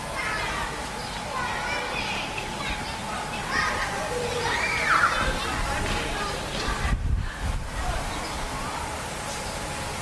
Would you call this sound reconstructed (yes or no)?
no